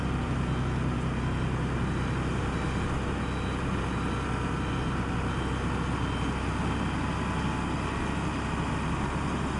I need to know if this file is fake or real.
real